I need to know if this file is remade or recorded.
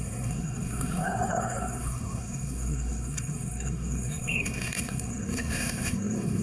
remade